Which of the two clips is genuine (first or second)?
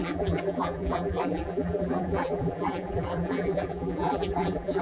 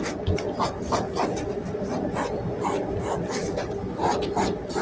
second